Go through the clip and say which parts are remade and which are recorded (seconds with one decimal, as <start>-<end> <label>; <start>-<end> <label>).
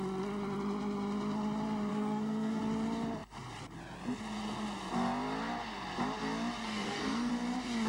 0.0-1.9 recorded; 1.9-2.6 remade; 2.6-6.6 recorded; 6.6-7.3 remade; 7.3-7.9 recorded